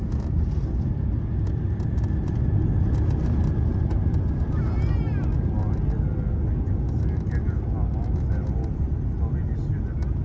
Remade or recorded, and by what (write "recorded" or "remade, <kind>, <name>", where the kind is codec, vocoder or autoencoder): recorded